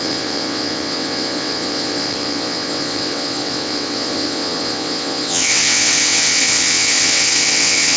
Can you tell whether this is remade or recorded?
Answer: remade